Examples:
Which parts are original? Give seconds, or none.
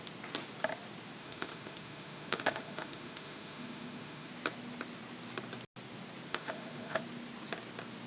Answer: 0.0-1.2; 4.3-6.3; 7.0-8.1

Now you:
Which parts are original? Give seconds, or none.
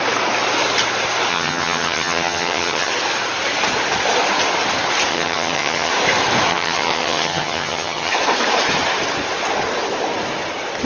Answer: 0.0-1.3; 2.9-5.1; 5.9-6.5; 8.1-10.9